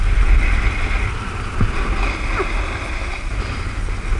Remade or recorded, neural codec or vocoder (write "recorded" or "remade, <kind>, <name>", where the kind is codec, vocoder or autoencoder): recorded